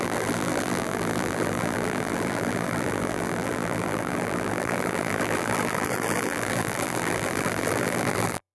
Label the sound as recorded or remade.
remade